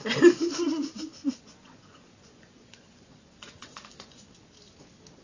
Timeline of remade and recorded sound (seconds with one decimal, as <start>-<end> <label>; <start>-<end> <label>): 0.0-1.2 recorded; 1.2-4.3 remade; 4.3-5.2 recorded